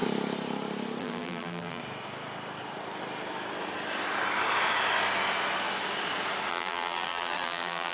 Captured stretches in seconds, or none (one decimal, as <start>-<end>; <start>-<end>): 0.0-1.0; 1.8-6.5

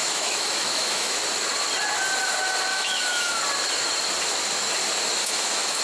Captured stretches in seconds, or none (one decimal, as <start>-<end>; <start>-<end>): 1.2-2.7; 3.4-5.2

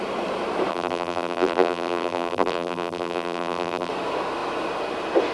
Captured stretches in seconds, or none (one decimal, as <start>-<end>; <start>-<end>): 0.0-0.7; 3.9-5.3

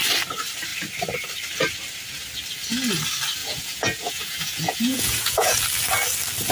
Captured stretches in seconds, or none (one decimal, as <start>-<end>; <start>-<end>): 0.0-3.4; 5.6-6.5

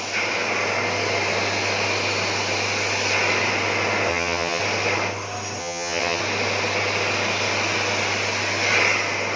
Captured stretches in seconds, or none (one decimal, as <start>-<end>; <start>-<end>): 0.0-4.1; 4.6-5.6; 6.2-9.4